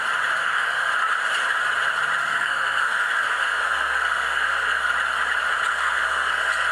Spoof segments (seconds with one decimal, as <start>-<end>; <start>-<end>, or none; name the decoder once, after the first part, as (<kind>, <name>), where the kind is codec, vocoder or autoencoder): 0.4-0.9 (codec, SNAC); 2.2-4.9; 5.7-6.7